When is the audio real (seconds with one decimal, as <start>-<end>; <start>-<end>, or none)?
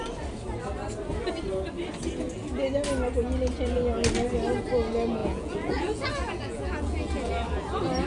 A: 0.0-5.2; 7.3-8.1